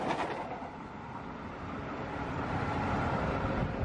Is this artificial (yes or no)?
no